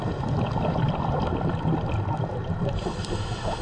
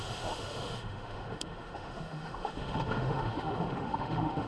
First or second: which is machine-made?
second